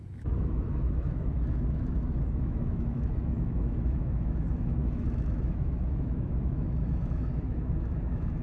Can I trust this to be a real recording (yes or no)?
no